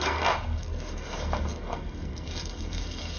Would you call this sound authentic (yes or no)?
no